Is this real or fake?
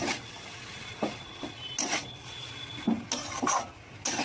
real